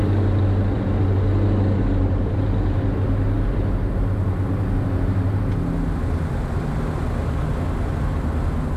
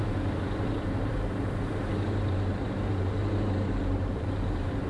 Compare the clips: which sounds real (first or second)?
first